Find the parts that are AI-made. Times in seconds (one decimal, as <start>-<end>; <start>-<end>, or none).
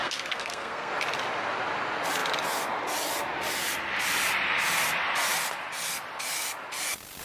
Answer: 0.0-0.9